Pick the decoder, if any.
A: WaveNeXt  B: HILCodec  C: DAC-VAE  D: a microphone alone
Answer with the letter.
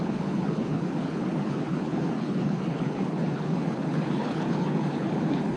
B